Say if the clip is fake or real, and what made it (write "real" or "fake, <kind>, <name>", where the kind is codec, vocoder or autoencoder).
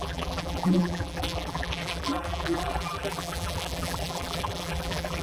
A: fake, vocoder, BigVGAN v2